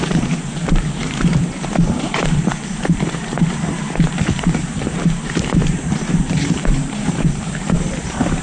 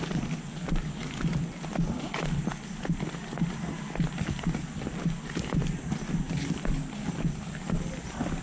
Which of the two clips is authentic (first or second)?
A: second